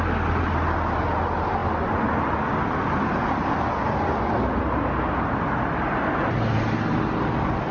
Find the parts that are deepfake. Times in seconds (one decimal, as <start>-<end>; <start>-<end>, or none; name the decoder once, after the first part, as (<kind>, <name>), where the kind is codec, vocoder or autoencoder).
none